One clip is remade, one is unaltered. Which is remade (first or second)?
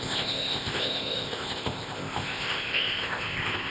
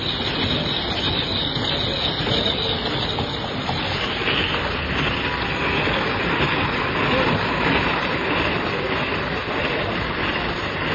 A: first